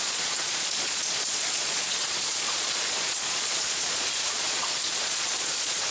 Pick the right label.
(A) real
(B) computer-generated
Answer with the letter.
B